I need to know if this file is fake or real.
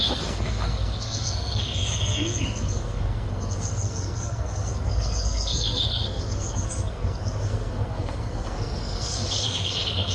fake